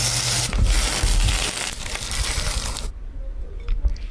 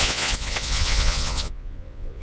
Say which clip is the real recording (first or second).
first